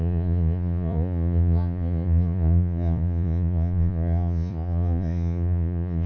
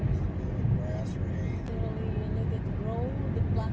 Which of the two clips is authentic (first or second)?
second